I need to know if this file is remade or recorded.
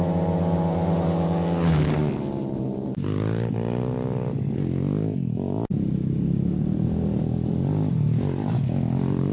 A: recorded